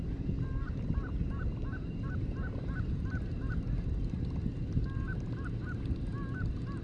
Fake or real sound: real